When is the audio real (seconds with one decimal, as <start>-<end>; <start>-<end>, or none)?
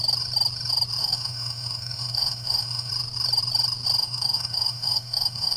0.0-1.0; 2.9-4.0